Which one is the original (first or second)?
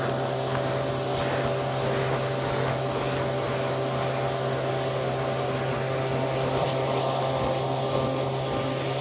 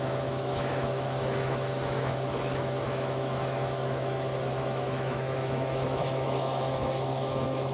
first